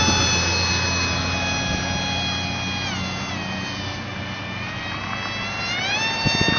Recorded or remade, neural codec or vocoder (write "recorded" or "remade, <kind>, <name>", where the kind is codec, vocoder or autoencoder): recorded